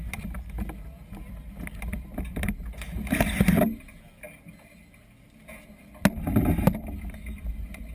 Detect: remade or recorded recorded